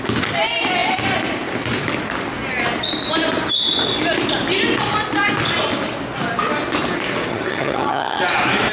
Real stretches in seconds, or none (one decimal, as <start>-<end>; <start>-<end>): 0.0-7.3; 8.2-8.7